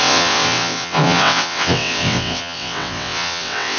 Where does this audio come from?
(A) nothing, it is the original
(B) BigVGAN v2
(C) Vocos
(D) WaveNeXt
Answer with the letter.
D